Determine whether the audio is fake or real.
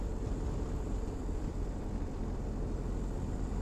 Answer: real